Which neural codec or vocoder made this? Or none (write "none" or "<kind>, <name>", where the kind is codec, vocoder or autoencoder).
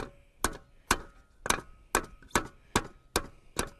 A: none